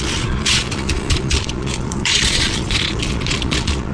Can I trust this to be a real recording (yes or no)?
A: no